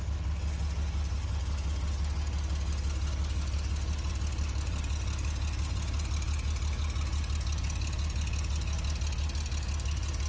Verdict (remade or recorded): recorded